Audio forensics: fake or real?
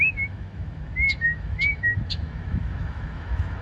fake